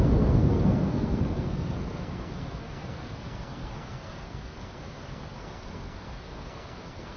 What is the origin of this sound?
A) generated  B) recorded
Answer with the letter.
A